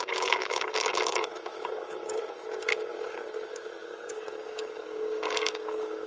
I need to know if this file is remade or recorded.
remade